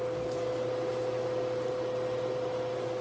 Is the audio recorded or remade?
recorded